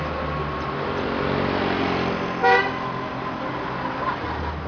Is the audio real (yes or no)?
yes